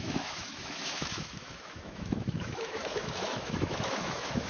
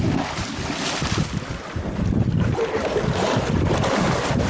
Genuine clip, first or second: second